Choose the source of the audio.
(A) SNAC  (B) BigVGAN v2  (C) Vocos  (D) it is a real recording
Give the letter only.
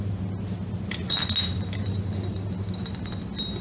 D